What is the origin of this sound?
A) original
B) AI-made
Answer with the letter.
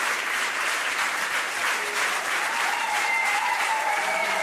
B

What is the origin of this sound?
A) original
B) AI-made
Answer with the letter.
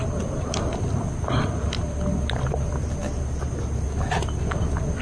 A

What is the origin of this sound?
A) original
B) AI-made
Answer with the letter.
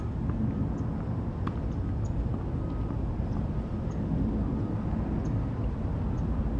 A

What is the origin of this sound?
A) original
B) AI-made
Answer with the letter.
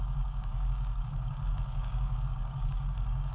B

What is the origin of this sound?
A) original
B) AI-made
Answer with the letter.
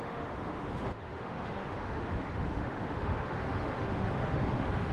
B